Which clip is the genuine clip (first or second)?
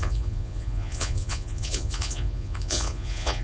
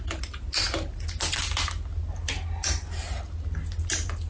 second